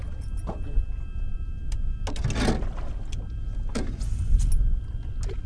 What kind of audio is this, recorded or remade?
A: recorded